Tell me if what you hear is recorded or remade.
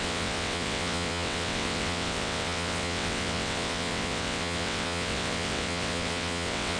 remade